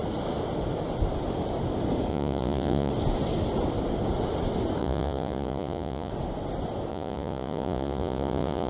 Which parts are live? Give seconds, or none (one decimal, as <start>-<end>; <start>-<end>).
0.0-2.1; 2.9-4.8; 6.1-6.9